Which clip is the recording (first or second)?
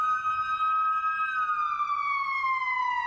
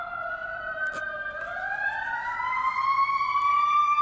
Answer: first